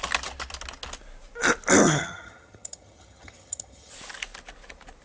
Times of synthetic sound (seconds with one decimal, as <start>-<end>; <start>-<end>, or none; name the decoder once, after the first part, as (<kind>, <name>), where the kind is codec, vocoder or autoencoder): 1.8-3.9 (vocoder, HiFi-GAN)